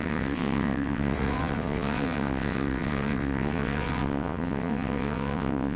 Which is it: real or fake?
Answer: fake